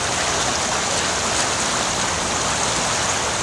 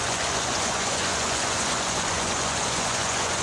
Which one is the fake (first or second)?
second